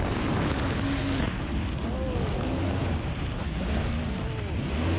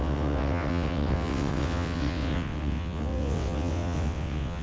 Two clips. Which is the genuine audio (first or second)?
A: first